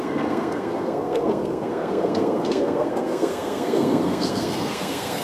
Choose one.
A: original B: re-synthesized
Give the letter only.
B